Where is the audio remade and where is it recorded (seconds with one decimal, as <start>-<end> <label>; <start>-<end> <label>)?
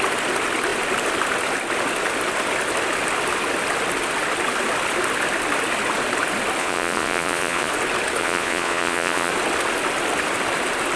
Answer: 0.0-6.6 recorded; 6.6-7.7 remade; 7.7-8.2 recorded; 8.2-9.3 remade; 9.3-11.0 recorded